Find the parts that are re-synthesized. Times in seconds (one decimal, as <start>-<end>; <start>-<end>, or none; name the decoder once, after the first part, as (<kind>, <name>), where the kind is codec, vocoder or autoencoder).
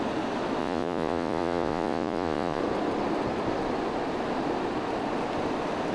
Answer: 0.6-2.6 (vocoder, Vocos)